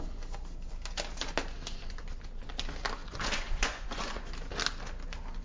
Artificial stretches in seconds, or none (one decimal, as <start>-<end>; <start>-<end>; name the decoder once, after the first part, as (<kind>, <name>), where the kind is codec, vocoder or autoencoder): 3.0-4.2 (vocoder, Vocos)